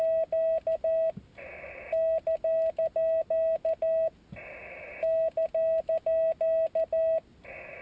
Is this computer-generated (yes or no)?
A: no